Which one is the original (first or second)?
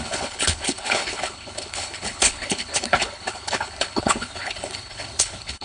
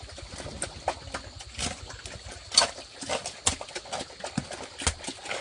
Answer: second